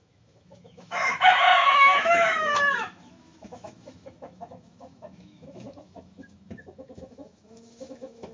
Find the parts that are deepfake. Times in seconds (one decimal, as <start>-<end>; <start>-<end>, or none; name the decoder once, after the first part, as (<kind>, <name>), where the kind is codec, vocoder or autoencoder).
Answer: 0.0-8.3 (autoencoder, DAC-VAE)